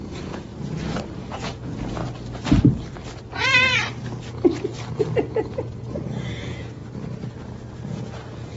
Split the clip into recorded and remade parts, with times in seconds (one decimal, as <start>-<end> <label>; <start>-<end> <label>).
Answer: 0.0-0.5 remade; 0.5-1.1 recorded; 1.1-2.0 remade; 2.0-3.4 recorded; 3.4-3.9 remade; 3.9-5.5 recorded; 5.5-6.8 remade; 6.8-7.9 recorded; 7.9-8.6 remade